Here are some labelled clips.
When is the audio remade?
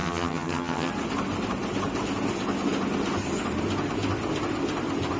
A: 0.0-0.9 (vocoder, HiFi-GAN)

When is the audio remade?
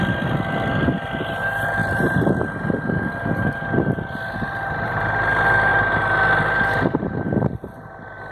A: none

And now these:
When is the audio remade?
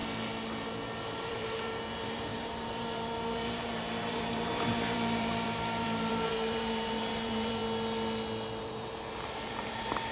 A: 1.0-7.6 (vocoder, BigVGAN v2); 8.6-10.1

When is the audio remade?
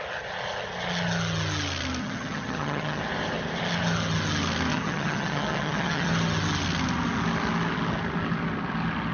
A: 2.0-3.0 (vocoder, HiFi-GAN); 4.7-6.1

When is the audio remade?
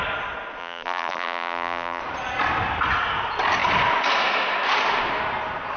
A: 0.6-2.0 (vocoder, BigVGAN v2)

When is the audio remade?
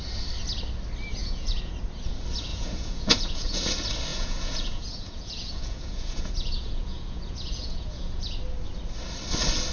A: 1.2-1.7 (vocoder, Vocos); 2.5-3.6; 4.1-8.4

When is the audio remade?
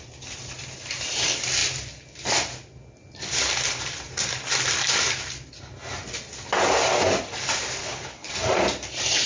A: 7.8-8.3 (codec, HILCodec)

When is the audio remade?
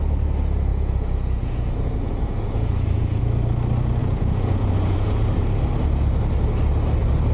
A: 0.7-3.2 (vocoder, Vocos); 4.0-5.4